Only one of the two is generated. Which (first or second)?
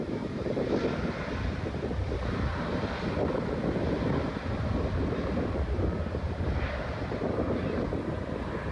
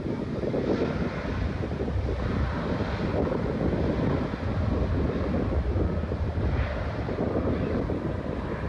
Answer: first